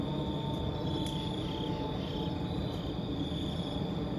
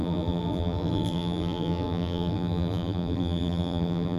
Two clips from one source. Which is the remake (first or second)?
second